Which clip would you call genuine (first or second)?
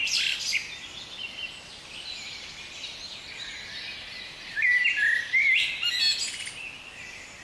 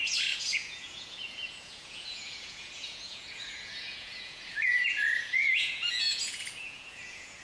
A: first